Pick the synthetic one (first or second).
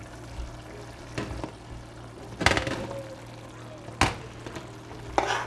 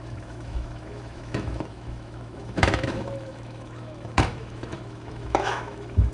second